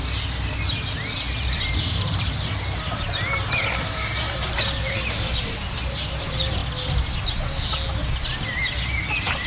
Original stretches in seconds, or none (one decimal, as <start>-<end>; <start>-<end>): 0.0-1.2; 6.6-9.1